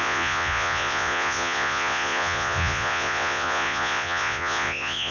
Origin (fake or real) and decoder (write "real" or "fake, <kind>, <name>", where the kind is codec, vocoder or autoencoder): fake, vocoder, Vocos